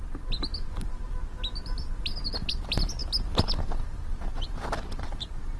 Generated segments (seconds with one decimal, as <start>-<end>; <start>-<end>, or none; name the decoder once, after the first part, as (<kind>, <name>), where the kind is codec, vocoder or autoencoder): 0.0-1.3 (vocoder, BigVGAN v2); 2.5-5.6